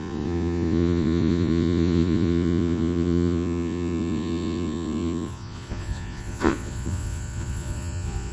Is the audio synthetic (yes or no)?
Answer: yes